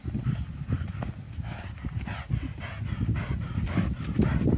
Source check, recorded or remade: recorded